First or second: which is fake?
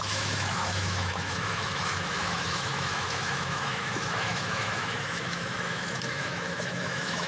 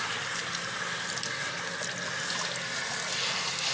first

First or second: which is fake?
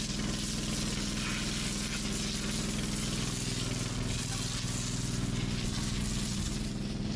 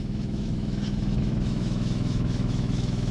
second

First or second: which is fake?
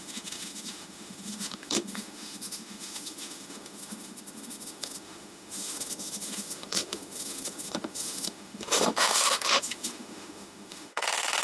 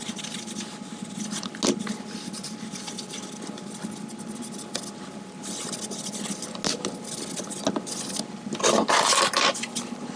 first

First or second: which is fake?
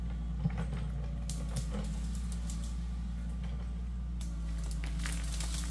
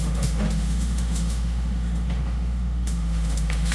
second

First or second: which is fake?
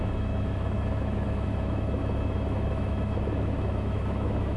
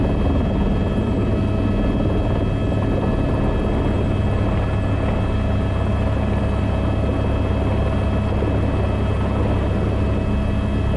first